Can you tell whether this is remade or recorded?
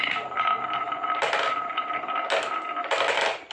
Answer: recorded